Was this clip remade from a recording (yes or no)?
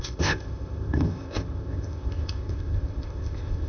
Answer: yes